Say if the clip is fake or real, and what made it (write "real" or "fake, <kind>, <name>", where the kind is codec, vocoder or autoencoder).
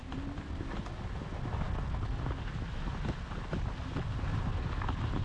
real